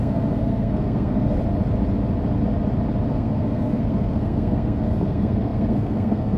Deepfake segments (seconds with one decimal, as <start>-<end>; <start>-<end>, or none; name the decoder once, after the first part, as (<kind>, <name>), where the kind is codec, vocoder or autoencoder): 0.0-1.4 (codec, SNAC); 3.1-6.4